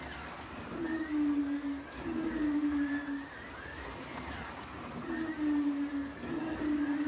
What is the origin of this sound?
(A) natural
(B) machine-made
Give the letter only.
A